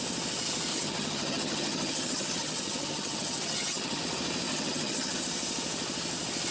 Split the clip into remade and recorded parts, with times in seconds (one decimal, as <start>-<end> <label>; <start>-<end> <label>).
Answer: 0.0-0.7 recorded; 0.7-4.0 remade; 4.0-4.5 recorded; 4.5-5.2 remade; 5.2-6.5 recorded